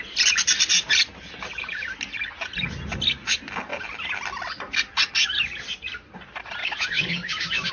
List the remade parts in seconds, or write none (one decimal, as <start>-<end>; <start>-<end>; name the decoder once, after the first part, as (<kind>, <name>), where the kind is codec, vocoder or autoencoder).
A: 6.6-7.7 (codec, DAC)